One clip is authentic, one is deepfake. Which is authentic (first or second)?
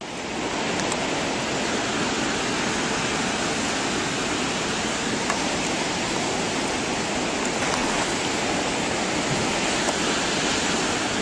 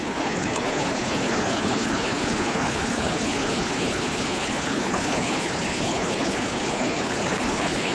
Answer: first